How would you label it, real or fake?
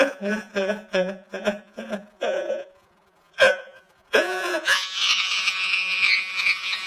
fake